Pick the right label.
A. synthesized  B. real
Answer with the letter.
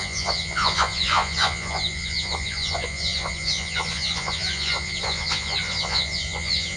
A